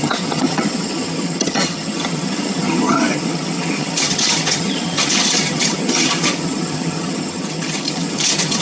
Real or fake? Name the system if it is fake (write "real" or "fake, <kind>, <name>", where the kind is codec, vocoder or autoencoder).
fake, vocoder, HiFi-GAN